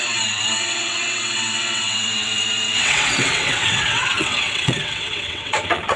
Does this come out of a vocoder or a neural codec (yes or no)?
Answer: yes